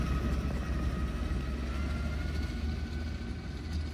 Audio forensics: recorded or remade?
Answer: recorded